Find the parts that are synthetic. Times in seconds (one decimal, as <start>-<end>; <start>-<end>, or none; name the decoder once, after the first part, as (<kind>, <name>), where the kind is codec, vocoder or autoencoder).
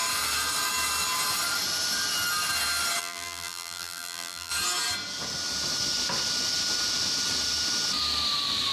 3.0-4.5 (vocoder, BigVGAN v2)